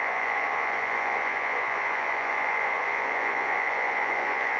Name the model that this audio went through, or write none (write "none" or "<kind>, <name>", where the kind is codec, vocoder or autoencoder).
vocoder, Vocos